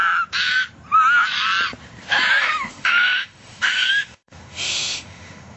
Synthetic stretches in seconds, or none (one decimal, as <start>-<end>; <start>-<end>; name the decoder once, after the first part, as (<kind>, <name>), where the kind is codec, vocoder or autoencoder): 2.4-5.6 (autoencoder, DAC-VAE)